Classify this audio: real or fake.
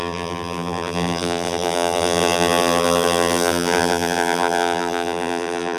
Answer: fake